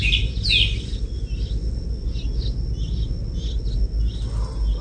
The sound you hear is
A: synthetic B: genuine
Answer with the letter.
B